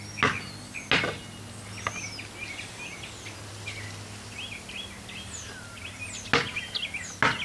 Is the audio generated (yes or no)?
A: no